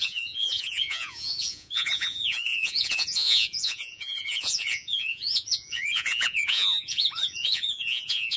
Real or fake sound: fake